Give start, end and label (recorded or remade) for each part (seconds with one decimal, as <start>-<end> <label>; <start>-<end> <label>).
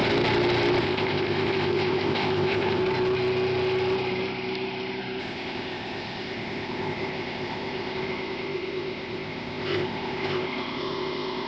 0.0-0.8 recorded; 0.8-2.8 remade; 2.8-5.2 recorded; 5.2-11.5 remade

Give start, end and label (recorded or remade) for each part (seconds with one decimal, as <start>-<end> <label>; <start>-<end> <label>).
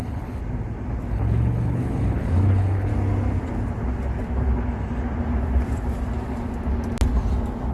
0.0-0.4 remade; 0.4-1.1 recorded; 1.1-2.9 remade; 2.9-7.7 recorded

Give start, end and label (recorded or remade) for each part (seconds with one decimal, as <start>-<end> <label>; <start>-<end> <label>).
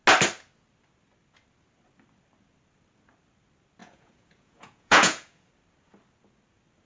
0.0-3.8 recorded; 3.8-5.5 remade; 5.5-6.9 recorded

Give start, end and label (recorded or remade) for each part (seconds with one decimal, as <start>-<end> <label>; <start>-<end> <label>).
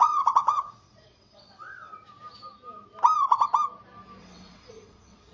0.0-1.9 remade; 1.9-4.2 recorded; 4.2-5.3 remade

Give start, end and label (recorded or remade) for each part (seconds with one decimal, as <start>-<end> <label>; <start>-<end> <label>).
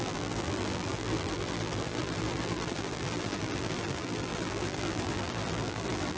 0.0-6.2 remade